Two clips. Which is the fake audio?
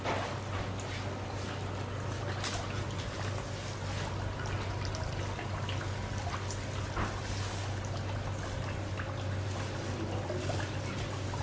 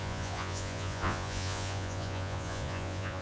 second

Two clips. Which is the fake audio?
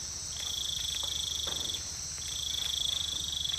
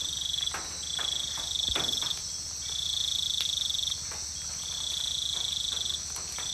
first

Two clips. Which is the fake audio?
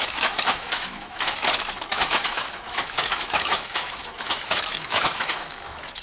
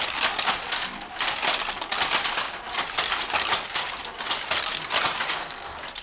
first